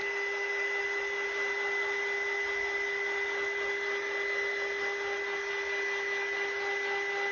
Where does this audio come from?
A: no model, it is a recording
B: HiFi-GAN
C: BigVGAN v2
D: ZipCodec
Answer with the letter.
A